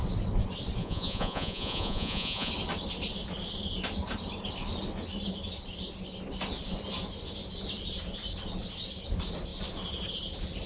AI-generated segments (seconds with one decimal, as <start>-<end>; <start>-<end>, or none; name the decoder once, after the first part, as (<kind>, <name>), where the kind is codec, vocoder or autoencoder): 0.8-2.5 (vocoder, Vocos)